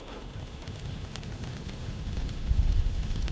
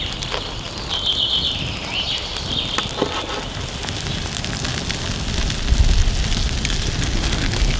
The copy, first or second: first